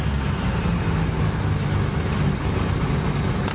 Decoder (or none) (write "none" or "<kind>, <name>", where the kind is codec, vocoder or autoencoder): none